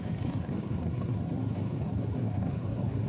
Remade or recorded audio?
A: remade